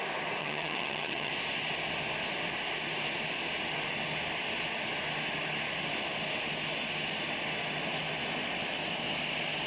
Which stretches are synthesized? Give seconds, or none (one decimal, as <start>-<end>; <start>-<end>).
0.4-1.3